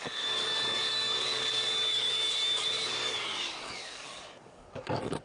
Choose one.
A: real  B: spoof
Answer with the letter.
B